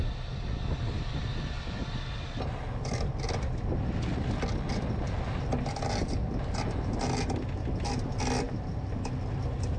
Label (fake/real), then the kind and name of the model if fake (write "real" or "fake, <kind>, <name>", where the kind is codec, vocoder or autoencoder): real